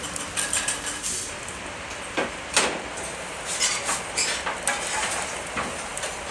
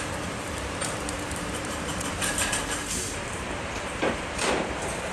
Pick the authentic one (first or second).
first